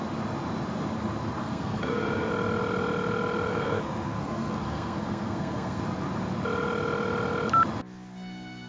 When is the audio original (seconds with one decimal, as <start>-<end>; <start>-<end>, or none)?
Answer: 0.0-1.4; 2.3-3.5; 5.8-8.7